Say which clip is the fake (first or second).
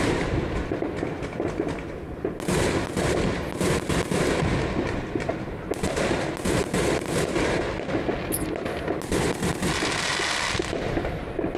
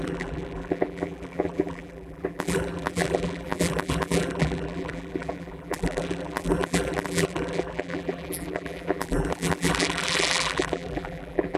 second